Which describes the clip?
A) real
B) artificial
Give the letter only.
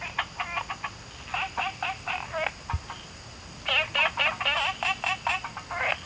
A